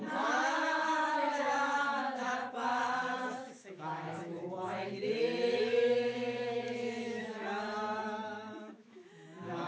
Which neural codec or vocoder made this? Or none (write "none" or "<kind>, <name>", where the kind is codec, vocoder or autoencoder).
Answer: autoencoder, DAC-VAE